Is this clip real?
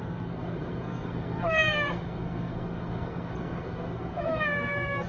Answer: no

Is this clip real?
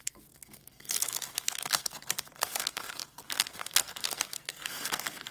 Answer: no